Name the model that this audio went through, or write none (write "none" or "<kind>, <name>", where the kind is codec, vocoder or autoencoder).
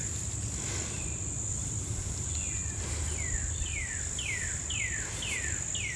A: none